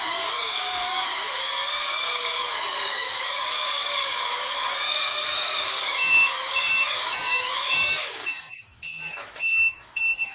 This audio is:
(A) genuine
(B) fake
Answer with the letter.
B